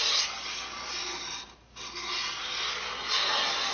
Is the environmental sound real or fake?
real